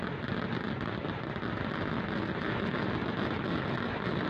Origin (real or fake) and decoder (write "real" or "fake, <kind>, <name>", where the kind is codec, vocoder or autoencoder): real